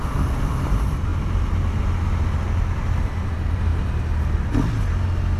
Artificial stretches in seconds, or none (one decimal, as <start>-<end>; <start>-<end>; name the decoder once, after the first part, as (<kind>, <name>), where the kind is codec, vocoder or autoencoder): 0.0-1.1 (vocoder, BigVGAN v2); 2.8-3.7